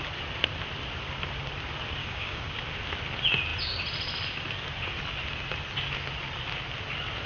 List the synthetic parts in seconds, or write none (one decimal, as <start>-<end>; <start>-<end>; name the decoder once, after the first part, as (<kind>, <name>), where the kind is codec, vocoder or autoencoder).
2.0-2.6 (codec, DAC)